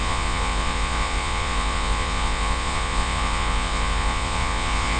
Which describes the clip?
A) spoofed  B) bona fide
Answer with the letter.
A